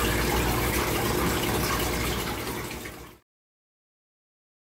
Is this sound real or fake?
real